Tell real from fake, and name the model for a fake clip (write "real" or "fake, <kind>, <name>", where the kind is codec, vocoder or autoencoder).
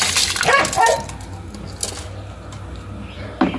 real